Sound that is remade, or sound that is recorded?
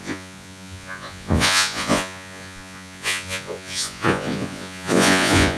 remade